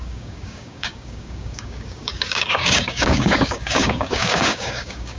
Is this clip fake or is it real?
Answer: fake